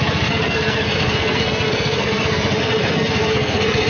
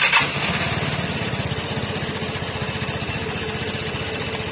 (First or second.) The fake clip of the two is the first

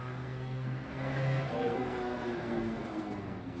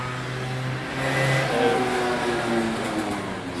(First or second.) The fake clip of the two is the first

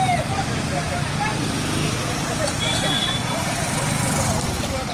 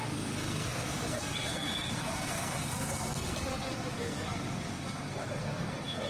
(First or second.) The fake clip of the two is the second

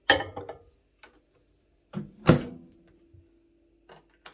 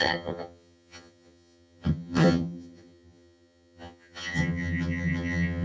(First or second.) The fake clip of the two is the second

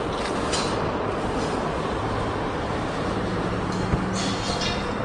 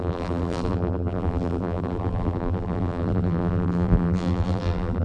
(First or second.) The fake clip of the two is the second